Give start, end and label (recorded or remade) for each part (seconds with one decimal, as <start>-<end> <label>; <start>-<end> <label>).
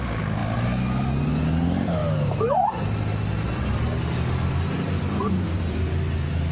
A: 0.0-6.5 recorded